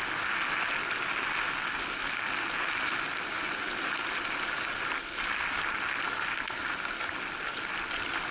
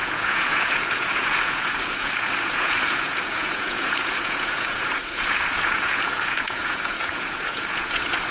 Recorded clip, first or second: first